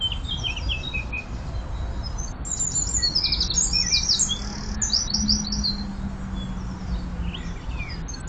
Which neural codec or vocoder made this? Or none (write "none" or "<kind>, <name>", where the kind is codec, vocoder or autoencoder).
none